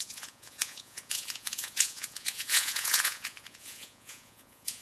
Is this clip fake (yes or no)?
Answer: yes